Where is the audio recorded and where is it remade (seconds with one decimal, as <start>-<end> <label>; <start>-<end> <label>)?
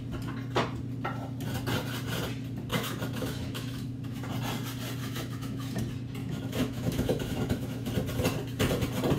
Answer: 0.0-2.7 recorded; 2.7-4.3 remade; 4.3-5.0 recorded; 5.0-5.8 remade; 5.8-6.2 recorded; 6.2-7.9 remade; 7.9-9.2 recorded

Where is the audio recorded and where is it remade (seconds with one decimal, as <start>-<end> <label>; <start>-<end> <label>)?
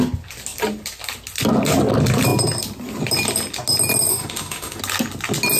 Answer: 0.0-4.1 recorded; 4.1-4.8 remade; 4.8-5.6 recorded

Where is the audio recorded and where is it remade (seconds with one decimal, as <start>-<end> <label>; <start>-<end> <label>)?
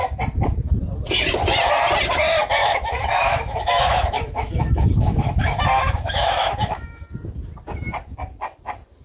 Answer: 0.0-2.6 recorded; 2.6-7.0 remade; 7.0-9.0 recorded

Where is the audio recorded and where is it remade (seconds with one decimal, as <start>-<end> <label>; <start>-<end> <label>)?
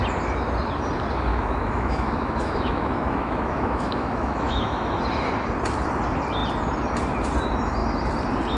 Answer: 0.0-1.3 recorded; 1.3-5.0 remade; 5.0-8.6 recorded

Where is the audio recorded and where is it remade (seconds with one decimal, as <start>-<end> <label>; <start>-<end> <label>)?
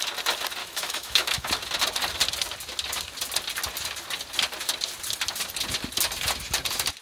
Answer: 0.0-0.6 recorded; 0.6-1.5 remade; 1.5-7.0 recorded